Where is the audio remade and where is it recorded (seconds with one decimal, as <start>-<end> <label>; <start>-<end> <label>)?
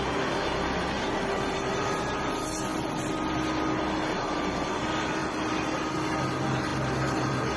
0.0-7.6 recorded